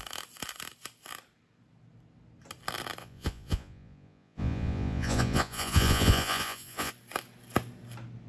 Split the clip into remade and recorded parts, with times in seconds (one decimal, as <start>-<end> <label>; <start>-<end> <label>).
0.0-3.0 recorded; 3.0-6.9 remade; 6.9-8.3 recorded